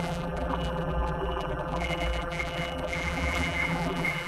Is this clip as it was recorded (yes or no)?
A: no